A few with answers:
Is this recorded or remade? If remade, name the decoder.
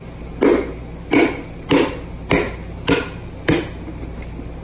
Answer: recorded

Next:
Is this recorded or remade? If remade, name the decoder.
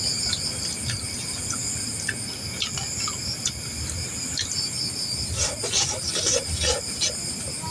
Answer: recorded